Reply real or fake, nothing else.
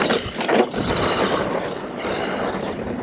real